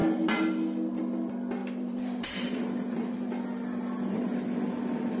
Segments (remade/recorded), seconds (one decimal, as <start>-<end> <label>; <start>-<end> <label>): 0.0-1.6 recorded; 1.6-3.3 remade; 3.3-5.2 recorded